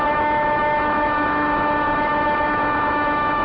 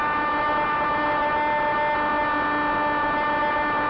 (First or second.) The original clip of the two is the second